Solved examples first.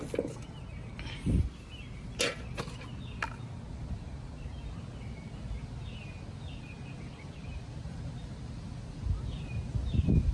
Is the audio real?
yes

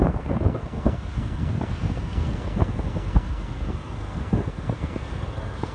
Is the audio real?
no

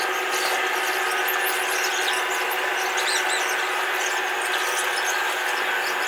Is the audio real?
yes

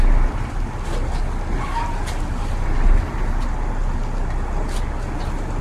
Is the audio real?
yes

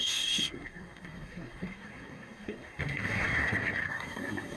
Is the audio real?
no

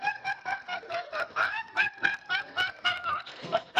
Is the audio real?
no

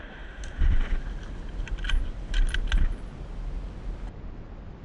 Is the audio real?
yes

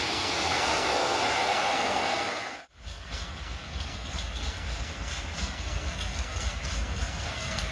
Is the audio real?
no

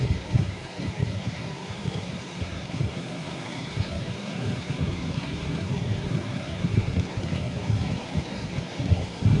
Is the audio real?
no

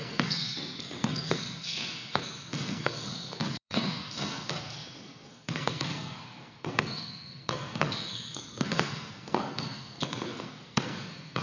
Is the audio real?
no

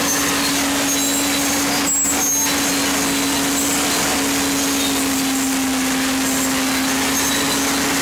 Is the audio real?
yes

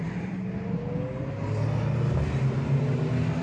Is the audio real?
yes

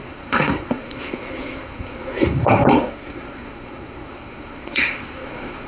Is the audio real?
no